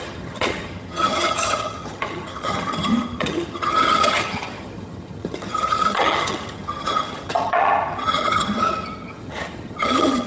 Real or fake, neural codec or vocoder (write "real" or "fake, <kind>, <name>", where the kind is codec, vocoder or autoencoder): fake, vocoder, HiFi-GAN